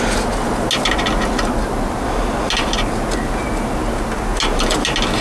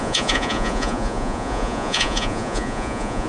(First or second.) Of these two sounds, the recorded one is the first